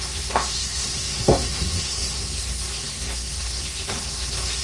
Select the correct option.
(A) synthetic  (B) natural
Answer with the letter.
A